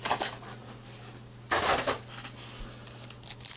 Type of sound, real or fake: real